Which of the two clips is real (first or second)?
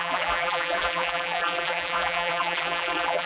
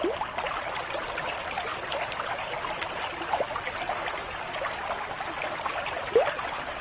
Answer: second